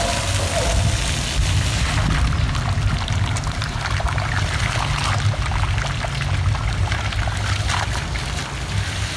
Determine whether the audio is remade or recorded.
recorded